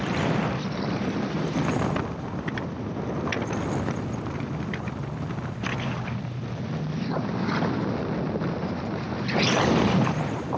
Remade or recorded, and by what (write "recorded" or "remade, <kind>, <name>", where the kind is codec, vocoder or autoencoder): remade, vocoder, BigVGAN v2